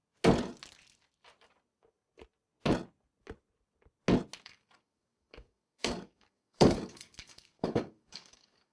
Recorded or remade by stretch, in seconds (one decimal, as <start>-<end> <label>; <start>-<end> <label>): 0.0-4.4 recorded; 4.4-8.7 remade